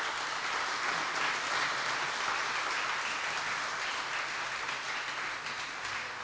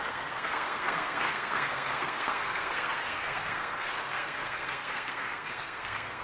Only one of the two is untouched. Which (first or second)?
first